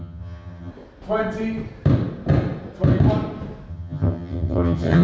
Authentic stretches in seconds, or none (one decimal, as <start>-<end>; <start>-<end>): 0.7-3.7